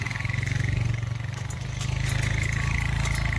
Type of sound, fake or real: real